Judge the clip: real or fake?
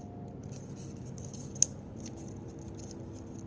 real